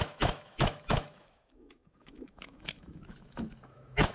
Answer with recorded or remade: remade